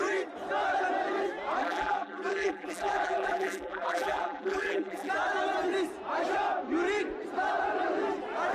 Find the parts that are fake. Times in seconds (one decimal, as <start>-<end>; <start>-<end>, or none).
1.6-5.1

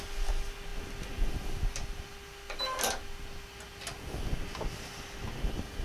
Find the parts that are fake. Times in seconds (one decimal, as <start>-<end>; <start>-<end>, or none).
none

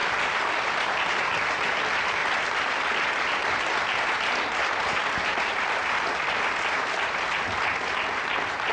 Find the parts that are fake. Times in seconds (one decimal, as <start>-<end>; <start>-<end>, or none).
0.0-1.4; 2.2-3.7; 5.0-7.3

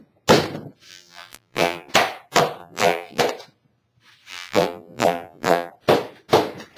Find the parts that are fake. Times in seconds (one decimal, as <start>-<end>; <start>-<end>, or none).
0.9-1.9; 2.6-3.2; 4.3-5.7

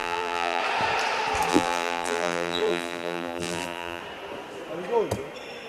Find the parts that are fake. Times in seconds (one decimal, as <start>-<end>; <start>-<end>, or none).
0.0-0.6; 1.5-4.0

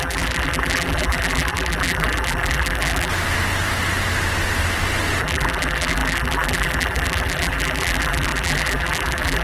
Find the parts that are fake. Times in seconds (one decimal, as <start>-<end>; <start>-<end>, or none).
0.0-3.1; 5.2-9.4

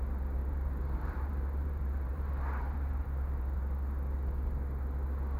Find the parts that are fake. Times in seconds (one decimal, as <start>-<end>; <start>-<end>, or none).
0.4-3.6

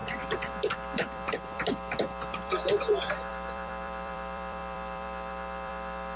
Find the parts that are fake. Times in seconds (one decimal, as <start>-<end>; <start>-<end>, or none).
0.0-6.2